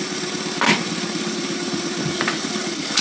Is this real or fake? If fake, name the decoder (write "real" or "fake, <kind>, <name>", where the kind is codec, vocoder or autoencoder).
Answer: real